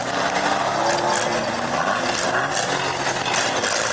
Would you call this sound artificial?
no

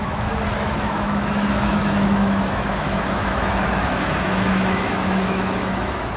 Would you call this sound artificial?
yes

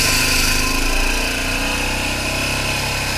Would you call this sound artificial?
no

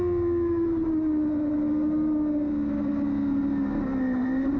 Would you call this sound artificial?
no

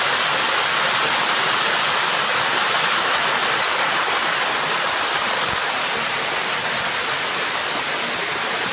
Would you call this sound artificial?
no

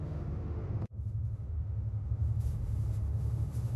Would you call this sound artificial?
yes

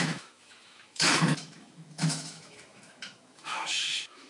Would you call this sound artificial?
yes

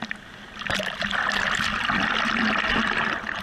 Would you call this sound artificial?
no